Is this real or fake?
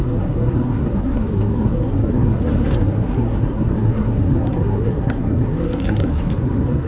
fake